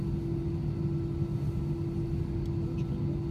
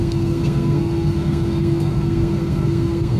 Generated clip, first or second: second